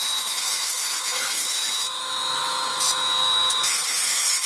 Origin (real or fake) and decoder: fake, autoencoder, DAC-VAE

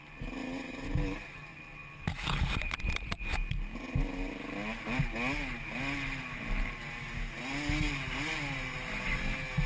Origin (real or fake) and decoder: real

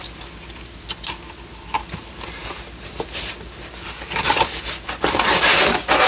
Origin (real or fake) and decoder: real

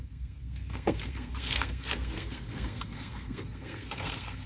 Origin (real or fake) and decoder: fake, codec, SNAC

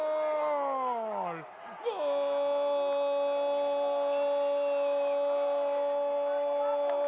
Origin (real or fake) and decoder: real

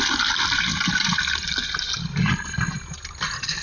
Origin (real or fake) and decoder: real